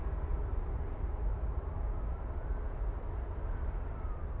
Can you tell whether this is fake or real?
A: real